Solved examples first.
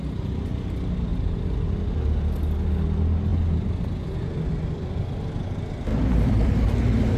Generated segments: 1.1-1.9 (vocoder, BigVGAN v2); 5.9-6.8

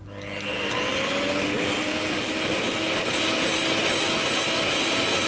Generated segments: 0.0-3.2 (vocoder, BigVGAN v2)

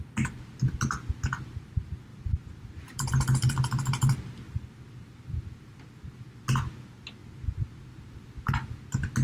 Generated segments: 2.1-6.4 (vocoder, BigVGAN v2); 7.2-8.5

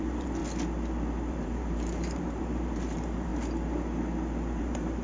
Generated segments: 0.0-0.4 (vocoder, BigVGAN v2); 1.3-3.3; 4.6-5.0

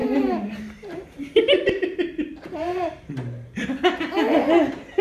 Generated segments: 0.0-3.0 (vocoder, BigVGAN v2)

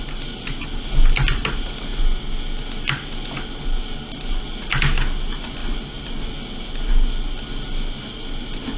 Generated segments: none

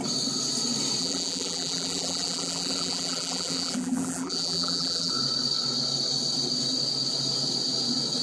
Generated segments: 1.0-5.1 (vocoder, BigVGAN v2)